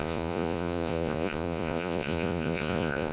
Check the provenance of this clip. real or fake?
fake